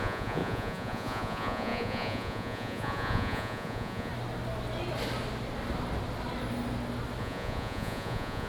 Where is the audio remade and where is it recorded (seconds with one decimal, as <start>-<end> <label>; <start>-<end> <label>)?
0.0-4.1 remade; 4.1-7.2 recorded; 7.2-8.5 remade